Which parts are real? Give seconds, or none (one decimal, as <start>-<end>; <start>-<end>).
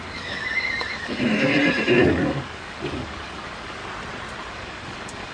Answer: 1.5-2.1; 3.8-4.5